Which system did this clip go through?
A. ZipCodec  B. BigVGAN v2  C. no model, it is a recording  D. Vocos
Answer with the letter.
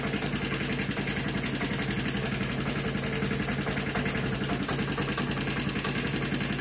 C